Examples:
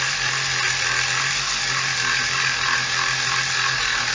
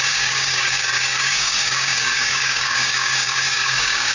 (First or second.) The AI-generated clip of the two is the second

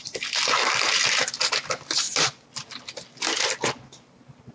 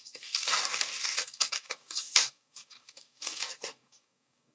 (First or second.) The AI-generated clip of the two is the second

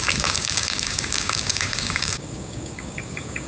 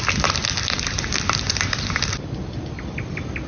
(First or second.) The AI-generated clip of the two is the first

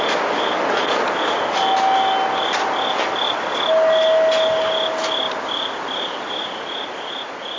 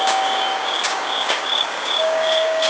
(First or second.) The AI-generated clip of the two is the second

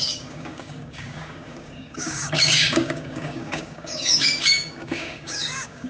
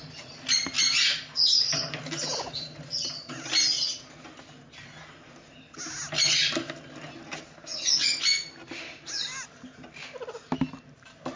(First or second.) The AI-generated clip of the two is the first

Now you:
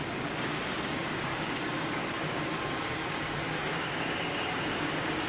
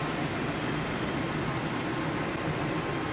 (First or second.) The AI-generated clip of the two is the first